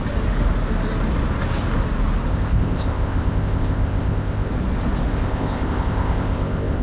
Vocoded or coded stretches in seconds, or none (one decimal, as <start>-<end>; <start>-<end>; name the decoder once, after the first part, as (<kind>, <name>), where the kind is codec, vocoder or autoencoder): 2.3-4.5 (codec, ZipCodec); 5.1-6.8